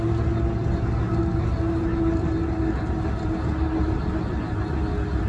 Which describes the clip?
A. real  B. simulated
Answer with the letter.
A